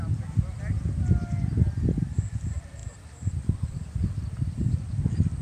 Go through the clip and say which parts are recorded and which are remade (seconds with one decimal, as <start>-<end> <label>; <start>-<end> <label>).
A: 0.0-2.8 recorded; 2.8-4.2 remade; 4.2-5.4 recorded